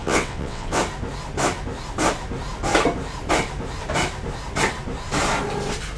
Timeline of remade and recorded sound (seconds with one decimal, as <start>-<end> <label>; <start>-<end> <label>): 0.0-0.8 remade; 0.8-6.0 recorded